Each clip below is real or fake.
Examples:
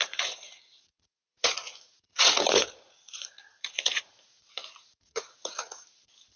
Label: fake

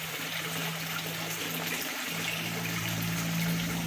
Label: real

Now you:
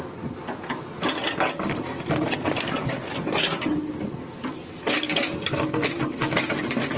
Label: real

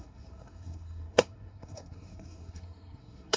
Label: fake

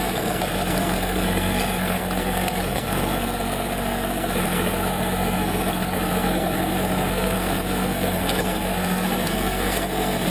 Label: fake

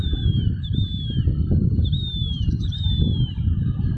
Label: real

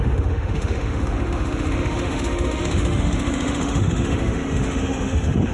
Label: fake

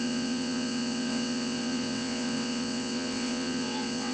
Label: fake